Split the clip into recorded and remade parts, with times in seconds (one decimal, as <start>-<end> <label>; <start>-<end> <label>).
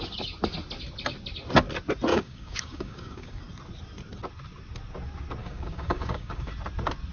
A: 0.0-2.1 recorded; 2.1-3.4 remade; 3.4-5.4 recorded; 5.4-6.5 remade; 6.5-7.1 recorded